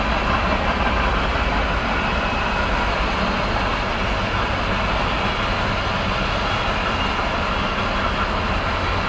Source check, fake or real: real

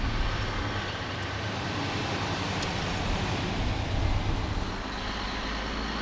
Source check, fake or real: real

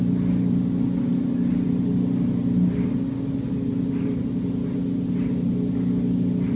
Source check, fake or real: real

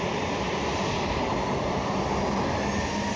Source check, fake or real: real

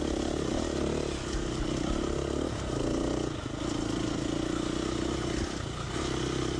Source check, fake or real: real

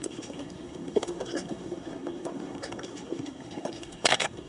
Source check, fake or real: fake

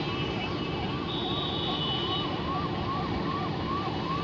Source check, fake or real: real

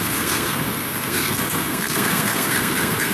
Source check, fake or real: fake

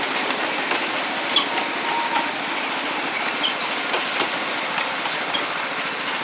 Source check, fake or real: real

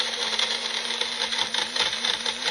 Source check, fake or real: real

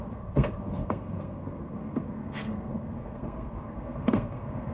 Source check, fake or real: fake